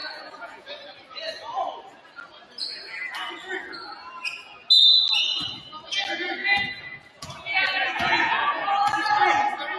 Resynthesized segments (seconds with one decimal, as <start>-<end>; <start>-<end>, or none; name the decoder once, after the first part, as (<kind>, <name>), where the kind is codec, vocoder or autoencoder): 0.0-0.7 (vocoder, Vocos); 6.4-8.9